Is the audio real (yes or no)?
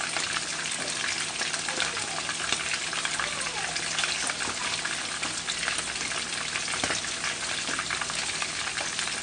yes